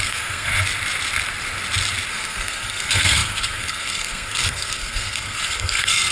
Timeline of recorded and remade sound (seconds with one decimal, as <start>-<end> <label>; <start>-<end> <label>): 0.0-0.5 remade; 0.5-2.1 recorded; 2.1-6.1 remade